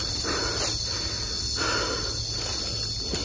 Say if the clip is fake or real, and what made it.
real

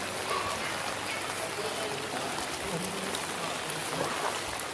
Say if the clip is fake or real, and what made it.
real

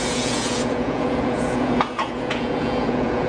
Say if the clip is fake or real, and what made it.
fake, vocoder, Vocos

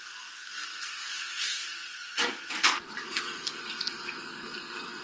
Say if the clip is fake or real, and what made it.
fake, codec, SNAC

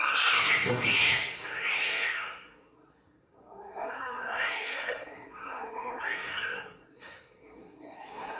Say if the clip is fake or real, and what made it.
fake, codec, SNAC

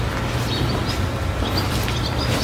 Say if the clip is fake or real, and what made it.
real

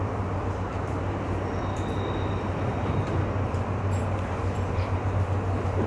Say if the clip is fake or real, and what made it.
fake, vocoder, BigVGAN v2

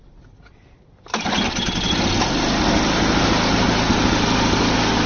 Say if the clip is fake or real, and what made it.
real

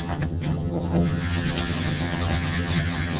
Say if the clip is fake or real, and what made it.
fake, vocoder, HiFi-GAN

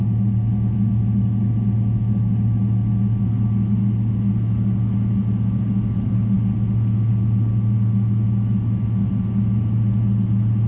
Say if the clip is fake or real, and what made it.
real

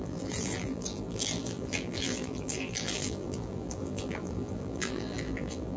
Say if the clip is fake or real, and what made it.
fake, vocoder, BigVGAN v2